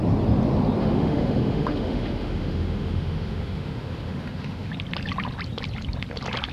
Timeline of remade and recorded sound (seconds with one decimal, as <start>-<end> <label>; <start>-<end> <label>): 0.0-0.8 recorded; 0.8-4.7 remade; 4.7-6.5 recorded